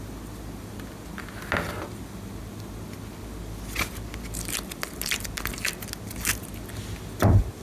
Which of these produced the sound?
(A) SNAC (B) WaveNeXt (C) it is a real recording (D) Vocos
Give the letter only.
C